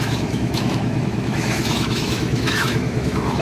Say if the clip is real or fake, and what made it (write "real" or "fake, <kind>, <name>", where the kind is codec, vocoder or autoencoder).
fake, autoencoder, DAC-VAE